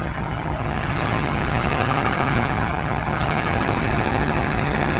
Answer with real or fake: fake